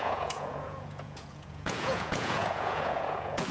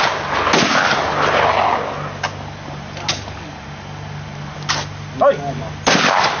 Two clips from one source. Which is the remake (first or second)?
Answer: first